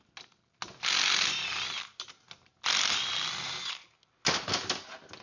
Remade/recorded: recorded